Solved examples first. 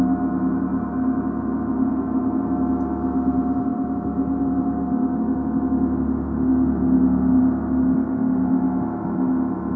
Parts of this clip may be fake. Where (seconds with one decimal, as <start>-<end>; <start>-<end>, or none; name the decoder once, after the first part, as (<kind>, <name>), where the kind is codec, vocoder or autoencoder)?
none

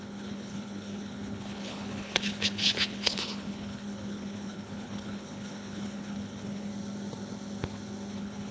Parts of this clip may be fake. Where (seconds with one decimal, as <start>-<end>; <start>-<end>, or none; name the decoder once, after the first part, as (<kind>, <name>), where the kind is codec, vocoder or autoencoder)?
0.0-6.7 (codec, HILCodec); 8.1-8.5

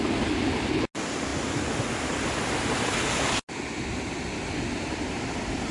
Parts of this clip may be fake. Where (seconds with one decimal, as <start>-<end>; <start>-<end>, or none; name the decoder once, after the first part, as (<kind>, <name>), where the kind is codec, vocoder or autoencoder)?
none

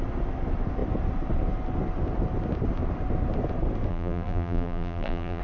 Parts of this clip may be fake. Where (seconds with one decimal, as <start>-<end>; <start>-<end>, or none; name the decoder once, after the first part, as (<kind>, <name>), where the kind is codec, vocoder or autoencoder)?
3.9-5.4 (vocoder, BigVGAN v2)